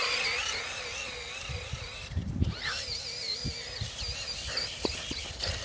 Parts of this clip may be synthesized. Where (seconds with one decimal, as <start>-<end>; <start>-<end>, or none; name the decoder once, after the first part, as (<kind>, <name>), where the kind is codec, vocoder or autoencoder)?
none